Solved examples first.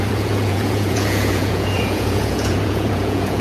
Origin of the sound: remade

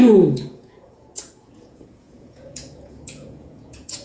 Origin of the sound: remade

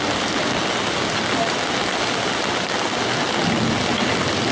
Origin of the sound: recorded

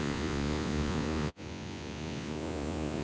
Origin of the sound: remade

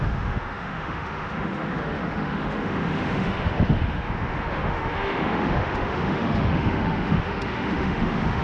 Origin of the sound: remade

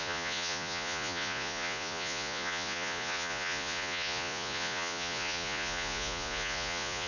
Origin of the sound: remade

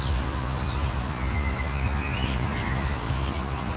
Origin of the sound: remade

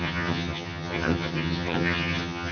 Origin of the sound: remade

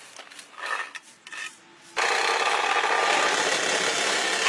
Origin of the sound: recorded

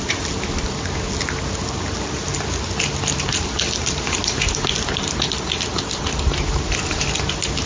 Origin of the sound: recorded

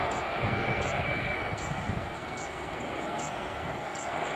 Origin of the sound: remade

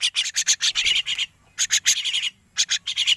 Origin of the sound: recorded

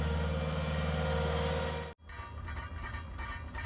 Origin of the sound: recorded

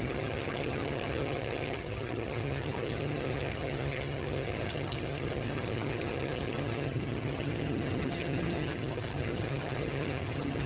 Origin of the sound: remade